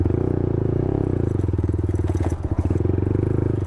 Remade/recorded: remade